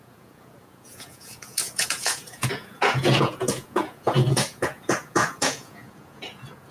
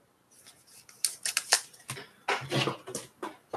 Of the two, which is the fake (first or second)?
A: first